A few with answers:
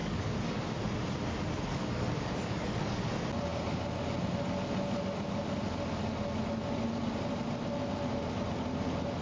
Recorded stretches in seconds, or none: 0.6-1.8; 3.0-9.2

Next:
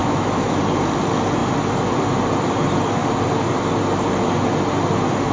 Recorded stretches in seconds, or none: 0.6-5.3

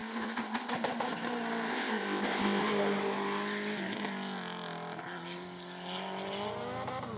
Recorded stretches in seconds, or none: 0.7-1.7; 2.6-7.2

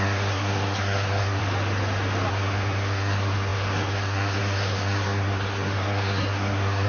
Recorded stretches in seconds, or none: 1.4-2.3

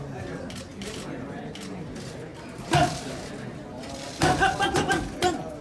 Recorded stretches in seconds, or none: 0.0-0.7; 1.4-2.3; 3.2-3.7; 4.9-5.6